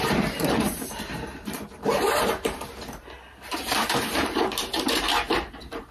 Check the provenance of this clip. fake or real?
fake